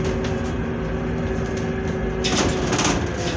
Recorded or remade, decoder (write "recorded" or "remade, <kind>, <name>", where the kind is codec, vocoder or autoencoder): recorded